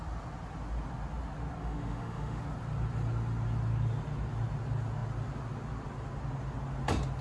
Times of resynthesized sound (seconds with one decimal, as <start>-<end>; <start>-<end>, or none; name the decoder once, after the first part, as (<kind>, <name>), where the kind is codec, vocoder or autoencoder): 1.6-2.4 (autoencoder, DAC-VAE)